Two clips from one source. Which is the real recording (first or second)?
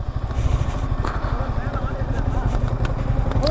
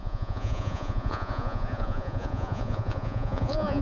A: first